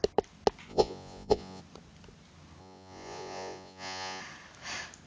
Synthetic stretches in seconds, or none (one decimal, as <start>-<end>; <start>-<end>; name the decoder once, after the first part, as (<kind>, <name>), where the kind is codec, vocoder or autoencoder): 0.7-1.6 (vocoder, Vocos); 2.6-4.2